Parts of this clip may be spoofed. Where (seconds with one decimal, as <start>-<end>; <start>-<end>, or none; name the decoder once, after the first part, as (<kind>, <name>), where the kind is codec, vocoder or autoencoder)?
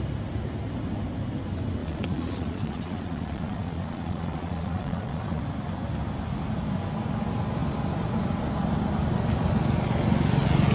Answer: 1.8-5.4 (vocoder, Vocos)